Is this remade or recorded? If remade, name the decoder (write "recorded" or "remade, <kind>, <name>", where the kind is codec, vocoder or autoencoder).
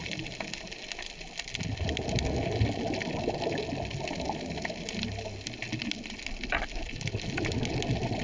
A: recorded